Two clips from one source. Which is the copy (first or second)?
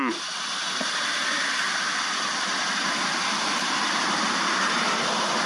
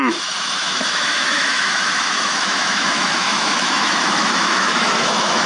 second